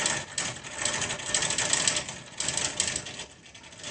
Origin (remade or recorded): recorded